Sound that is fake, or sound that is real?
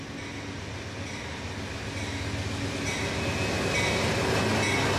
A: real